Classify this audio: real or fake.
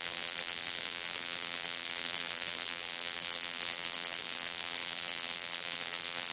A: fake